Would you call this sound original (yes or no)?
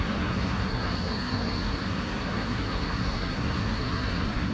no